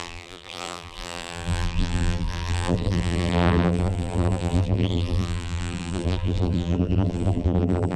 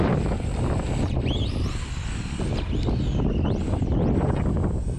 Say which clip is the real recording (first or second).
second